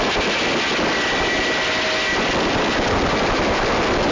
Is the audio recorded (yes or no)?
yes